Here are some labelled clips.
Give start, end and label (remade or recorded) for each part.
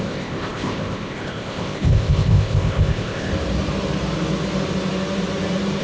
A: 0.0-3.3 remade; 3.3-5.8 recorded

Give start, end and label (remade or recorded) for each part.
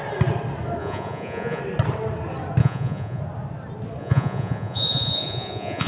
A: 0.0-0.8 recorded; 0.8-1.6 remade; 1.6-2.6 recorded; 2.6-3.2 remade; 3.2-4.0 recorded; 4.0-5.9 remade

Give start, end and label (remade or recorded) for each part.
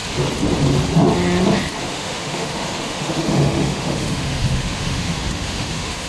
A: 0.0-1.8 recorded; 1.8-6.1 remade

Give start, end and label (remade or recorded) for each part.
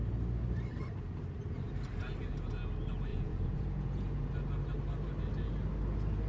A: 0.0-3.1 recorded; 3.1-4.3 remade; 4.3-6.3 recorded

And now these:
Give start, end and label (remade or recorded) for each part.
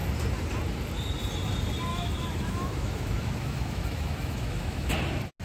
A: 0.0-1.9 recorded; 1.9-4.9 remade; 4.9-5.4 recorded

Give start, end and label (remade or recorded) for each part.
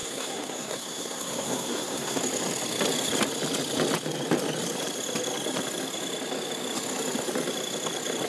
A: 0.0-2.2 remade; 2.2-8.3 recorded